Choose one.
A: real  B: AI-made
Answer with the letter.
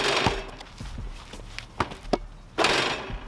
A